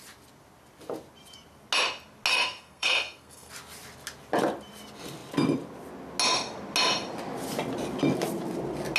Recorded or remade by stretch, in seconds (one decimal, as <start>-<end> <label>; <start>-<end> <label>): 0.0-2.3 recorded; 2.3-3.5 remade; 3.5-9.0 recorded